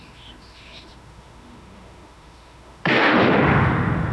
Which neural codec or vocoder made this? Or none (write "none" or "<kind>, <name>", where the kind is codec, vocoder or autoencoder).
autoencoder, DAC-VAE